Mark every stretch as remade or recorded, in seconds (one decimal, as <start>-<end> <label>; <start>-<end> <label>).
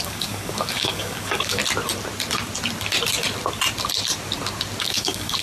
0.0-1.6 remade; 1.6-4.8 recorded; 4.8-5.4 remade